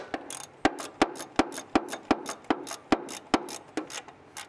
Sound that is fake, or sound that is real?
real